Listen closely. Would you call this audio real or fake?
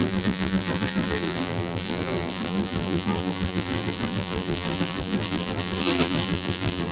fake